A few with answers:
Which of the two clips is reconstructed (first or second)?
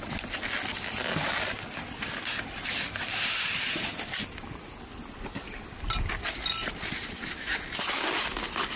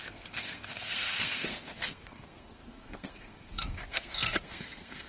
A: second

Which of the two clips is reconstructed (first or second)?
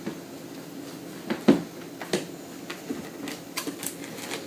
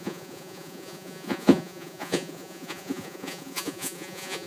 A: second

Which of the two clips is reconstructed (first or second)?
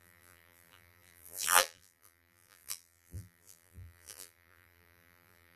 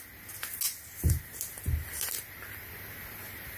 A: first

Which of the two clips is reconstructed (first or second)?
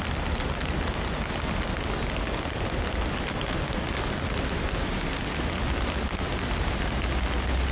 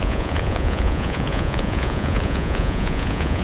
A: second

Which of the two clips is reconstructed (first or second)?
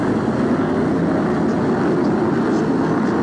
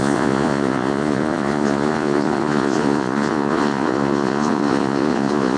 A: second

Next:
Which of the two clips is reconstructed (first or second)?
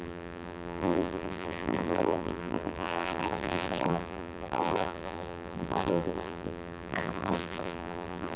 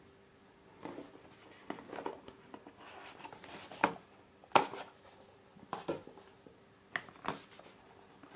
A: first